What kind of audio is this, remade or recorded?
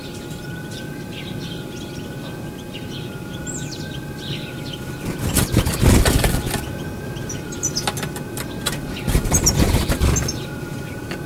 recorded